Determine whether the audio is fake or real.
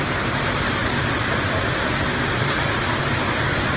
real